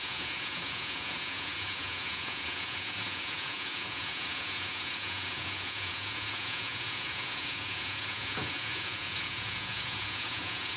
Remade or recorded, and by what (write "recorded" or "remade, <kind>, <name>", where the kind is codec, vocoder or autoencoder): remade, vocoder, Vocos